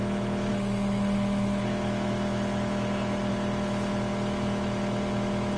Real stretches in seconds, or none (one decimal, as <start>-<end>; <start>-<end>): 0.0-5.6